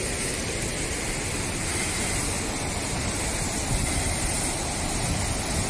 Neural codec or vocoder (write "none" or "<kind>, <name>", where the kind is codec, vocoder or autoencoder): none